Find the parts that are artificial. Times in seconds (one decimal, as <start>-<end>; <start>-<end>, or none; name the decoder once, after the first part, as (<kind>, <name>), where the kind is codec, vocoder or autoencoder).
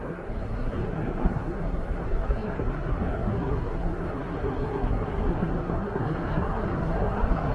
0.0-7.5 (codec, SNAC)